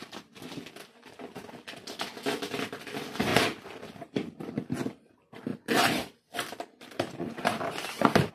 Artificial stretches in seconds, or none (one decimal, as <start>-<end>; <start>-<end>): 3.3-4.5; 5.5-8.3